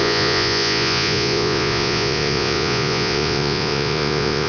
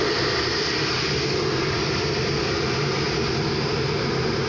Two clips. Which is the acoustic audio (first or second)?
second